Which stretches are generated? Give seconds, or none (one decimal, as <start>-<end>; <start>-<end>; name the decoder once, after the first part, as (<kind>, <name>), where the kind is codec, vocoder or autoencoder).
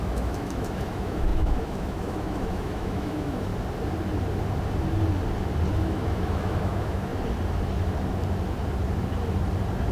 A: 0.0-3.5 (autoencoder, DAC-VAE); 5.7-7.1